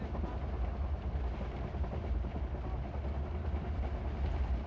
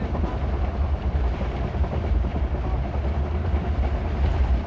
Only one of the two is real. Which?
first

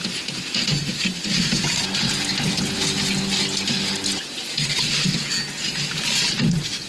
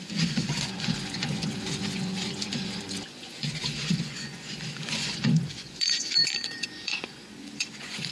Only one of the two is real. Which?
first